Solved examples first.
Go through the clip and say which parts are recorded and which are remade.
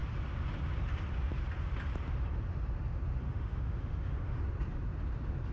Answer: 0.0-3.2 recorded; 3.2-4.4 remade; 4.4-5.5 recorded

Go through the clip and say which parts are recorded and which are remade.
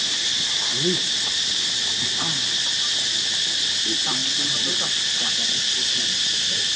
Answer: 0.0-6.8 recorded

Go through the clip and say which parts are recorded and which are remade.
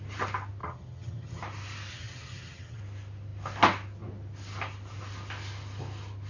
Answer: 0.0-0.6 recorded; 0.6-1.4 remade; 1.4-1.9 recorded; 1.9-2.8 remade; 2.8-6.3 recorded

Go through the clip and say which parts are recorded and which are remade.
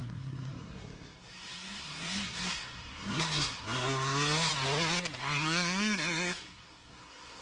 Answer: 0.0-4.5 remade; 4.5-5.2 recorded; 5.2-7.4 remade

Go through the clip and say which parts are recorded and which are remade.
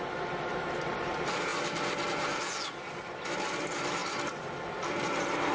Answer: 0.0-5.5 remade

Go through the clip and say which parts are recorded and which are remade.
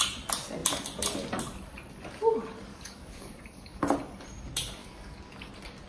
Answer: 0.0-2.7 recorded; 2.7-3.8 remade; 3.8-4.8 recorded; 4.8-5.5 remade; 5.5-5.9 recorded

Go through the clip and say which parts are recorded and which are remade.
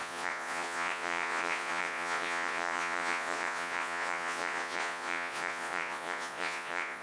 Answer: 0.0-7.0 remade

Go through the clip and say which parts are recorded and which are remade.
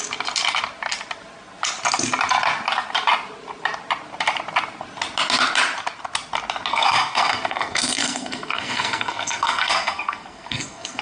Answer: 0.0-6.7 recorded; 6.7-11.0 remade